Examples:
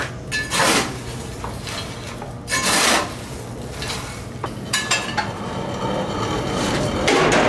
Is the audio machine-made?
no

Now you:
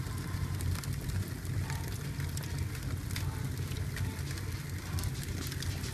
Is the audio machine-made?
no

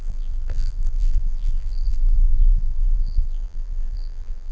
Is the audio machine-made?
yes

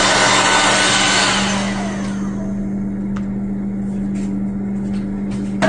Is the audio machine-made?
no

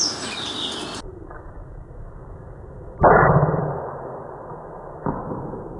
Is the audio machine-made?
yes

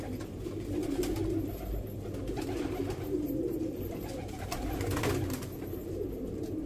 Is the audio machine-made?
no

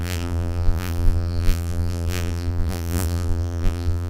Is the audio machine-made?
yes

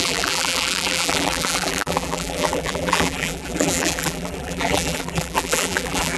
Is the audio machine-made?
yes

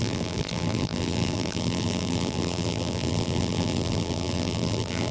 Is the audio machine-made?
yes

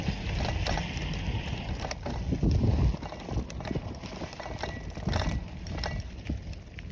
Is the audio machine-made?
no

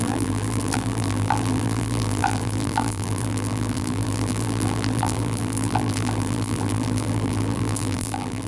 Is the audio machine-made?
yes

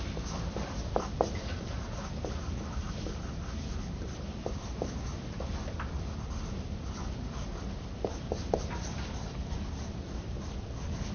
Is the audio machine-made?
yes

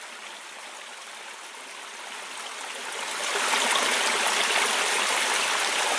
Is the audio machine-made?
no